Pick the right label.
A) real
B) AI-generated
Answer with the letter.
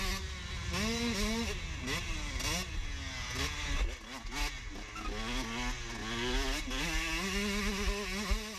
A